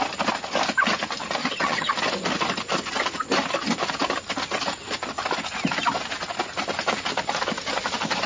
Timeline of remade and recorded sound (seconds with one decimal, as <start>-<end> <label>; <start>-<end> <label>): 0.0-1.4 recorded; 1.4-1.9 remade; 1.9-8.3 recorded